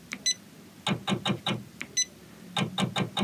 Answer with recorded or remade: recorded